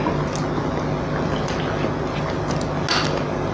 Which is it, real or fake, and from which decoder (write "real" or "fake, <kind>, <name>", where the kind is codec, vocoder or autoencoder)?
real